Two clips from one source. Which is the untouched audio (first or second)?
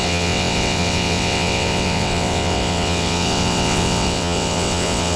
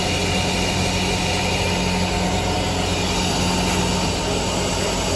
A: second